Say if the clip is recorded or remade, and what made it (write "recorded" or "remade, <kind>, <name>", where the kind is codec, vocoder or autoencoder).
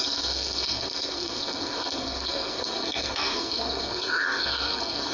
remade, codec, SNAC